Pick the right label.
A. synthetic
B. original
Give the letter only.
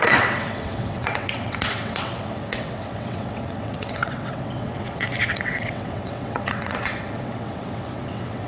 A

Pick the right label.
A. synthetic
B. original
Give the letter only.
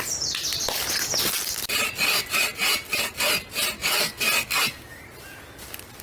B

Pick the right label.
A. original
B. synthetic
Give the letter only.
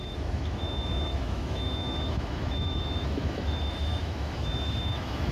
B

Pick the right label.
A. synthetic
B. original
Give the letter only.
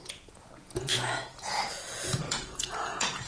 A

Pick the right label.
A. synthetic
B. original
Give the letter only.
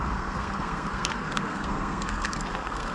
A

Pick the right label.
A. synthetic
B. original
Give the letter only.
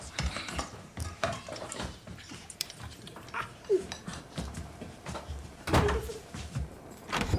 A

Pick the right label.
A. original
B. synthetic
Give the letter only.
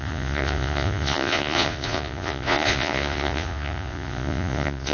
B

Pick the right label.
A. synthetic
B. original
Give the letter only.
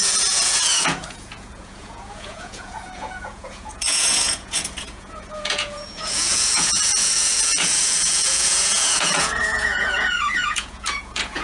A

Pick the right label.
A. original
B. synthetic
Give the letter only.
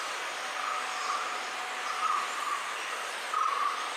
A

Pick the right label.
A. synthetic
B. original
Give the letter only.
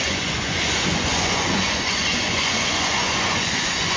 A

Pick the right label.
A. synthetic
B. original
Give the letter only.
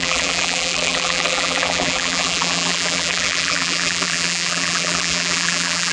A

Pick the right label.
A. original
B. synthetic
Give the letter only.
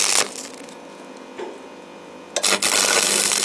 A